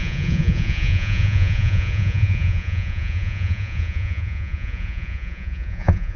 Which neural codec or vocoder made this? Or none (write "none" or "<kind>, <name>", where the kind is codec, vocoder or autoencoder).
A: vocoder, Vocos